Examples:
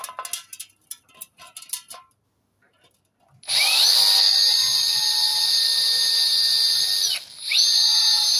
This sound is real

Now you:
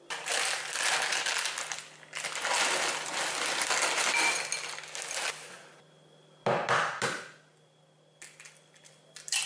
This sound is real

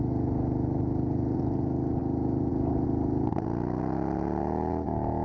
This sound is real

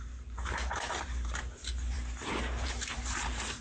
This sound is fake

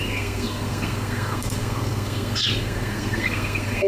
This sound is fake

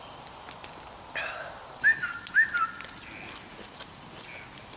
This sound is real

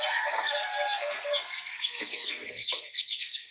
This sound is fake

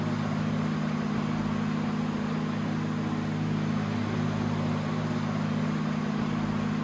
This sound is real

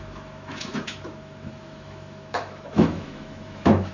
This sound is fake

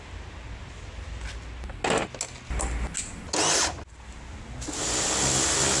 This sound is real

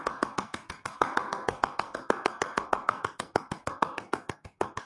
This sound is fake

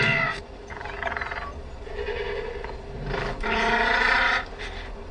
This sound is real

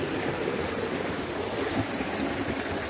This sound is real